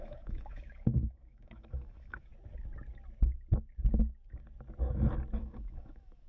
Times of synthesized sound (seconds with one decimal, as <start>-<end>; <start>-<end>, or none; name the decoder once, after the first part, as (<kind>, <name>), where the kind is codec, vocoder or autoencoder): 0.0-2.3 (autoencoder, DAC-VAE); 5.4-6.3